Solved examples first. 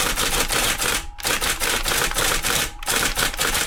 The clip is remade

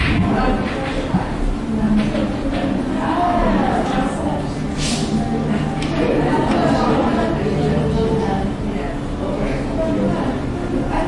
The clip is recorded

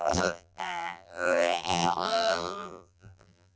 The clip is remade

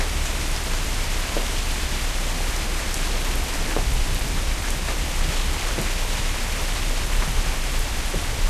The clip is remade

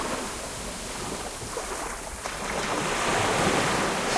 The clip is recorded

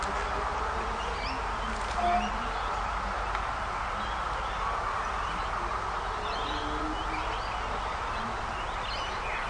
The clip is recorded